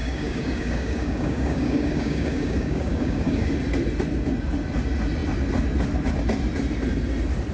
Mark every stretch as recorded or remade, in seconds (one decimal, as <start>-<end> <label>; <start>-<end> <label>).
0.0-3.5 remade; 3.5-7.5 recorded